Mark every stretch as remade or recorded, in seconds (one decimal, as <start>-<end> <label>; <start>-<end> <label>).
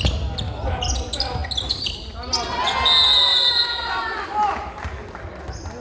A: 0.0-5.8 recorded